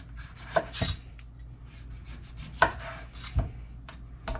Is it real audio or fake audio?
real